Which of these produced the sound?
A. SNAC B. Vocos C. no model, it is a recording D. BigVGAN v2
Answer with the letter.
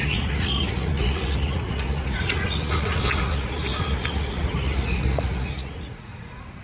B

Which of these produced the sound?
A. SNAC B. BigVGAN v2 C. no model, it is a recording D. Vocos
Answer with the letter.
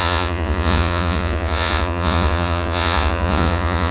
D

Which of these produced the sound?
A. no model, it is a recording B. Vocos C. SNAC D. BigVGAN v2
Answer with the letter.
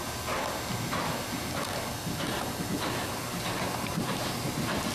A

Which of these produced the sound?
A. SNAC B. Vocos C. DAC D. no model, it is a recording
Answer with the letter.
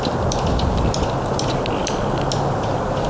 D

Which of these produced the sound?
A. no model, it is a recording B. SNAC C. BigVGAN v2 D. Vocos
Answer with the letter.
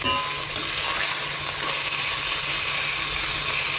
A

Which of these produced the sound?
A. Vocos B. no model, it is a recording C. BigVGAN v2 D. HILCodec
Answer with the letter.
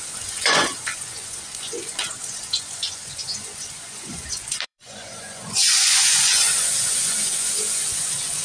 A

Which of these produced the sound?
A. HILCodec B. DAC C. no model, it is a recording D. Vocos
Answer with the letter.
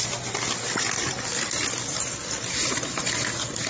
C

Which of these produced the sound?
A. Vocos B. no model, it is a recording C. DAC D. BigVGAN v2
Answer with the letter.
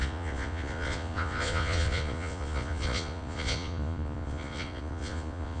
A